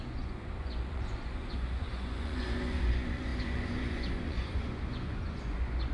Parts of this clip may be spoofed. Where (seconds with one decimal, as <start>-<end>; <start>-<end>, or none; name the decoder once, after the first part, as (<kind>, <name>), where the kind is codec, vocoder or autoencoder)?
0.0-5.9 (vocoder, Vocos)